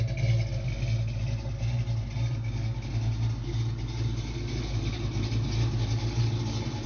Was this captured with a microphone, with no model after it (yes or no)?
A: yes